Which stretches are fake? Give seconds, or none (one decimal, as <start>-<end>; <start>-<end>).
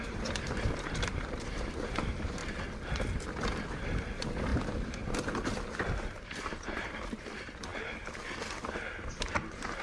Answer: 0.0-2.4; 3.6-4.5; 6.2-7.7; 8.6-9.8